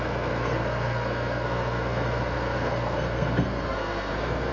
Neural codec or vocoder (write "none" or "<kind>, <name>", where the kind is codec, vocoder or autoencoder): codec, SNAC